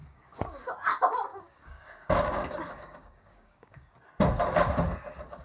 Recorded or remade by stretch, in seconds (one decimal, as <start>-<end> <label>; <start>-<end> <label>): 0.0-0.7 remade; 0.7-1.3 recorded; 1.3-3.9 remade; 3.9-5.4 recorded